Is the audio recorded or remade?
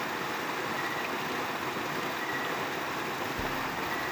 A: recorded